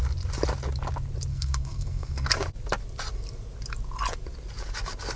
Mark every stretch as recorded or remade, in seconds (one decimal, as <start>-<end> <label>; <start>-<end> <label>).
0.0-1.3 recorded; 1.3-2.3 remade; 2.3-5.2 recorded